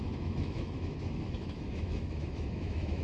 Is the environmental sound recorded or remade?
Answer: remade